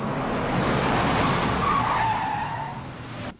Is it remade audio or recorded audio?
recorded